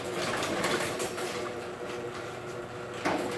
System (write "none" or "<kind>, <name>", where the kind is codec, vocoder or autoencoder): none